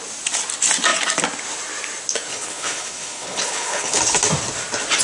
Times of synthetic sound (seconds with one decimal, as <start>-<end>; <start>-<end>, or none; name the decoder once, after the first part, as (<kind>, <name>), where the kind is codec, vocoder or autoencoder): 2.3-4.0 (codec, HILCodec)